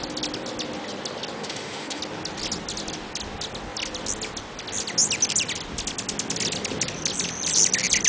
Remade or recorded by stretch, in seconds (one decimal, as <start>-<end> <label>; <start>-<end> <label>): 0.0-1.4 recorded; 1.4-2.0 remade; 2.0-8.1 recorded